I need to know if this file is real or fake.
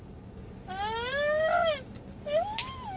real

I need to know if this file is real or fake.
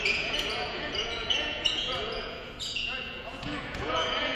fake